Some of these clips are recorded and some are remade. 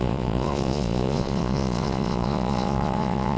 remade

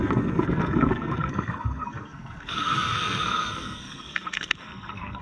remade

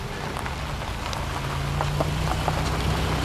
recorded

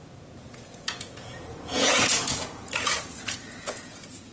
remade